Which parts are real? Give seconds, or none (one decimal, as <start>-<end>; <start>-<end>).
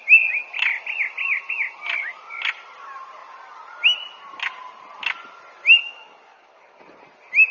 0.0-5.8; 6.8-7.5